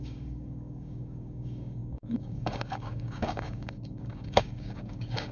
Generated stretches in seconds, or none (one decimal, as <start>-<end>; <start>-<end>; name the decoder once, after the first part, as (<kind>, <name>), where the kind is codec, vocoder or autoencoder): 0.0-5.3 (codec, DAC)